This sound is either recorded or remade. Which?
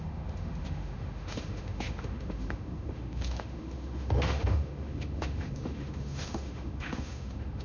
remade